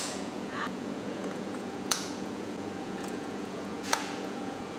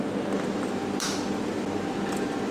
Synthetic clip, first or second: first